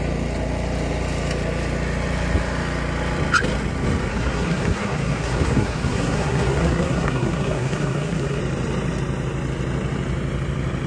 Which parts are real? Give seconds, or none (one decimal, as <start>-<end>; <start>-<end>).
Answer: 0.0-4.1; 8.4-10.9